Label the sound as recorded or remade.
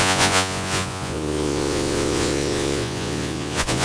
remade